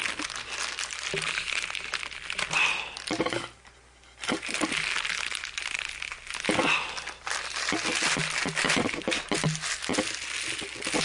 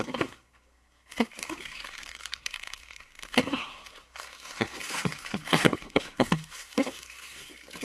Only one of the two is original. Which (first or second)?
first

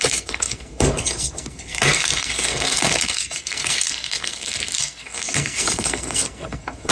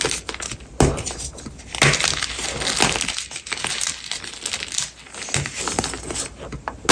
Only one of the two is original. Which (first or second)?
second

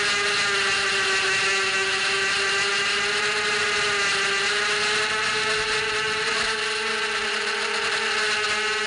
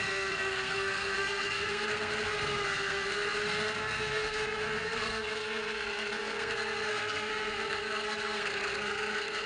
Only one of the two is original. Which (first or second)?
first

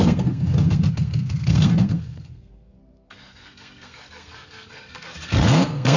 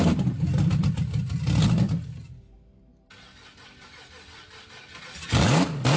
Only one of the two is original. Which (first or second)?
second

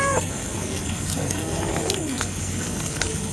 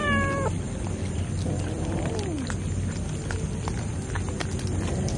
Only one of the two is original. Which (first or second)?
second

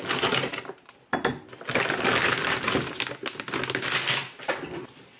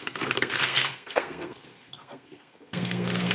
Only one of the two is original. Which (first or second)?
first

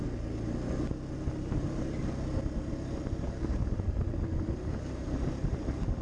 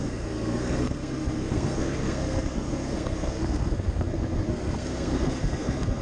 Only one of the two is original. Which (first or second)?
first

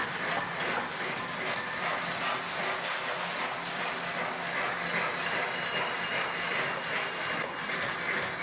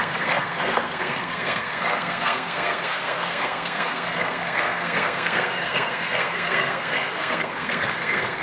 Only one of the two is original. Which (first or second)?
first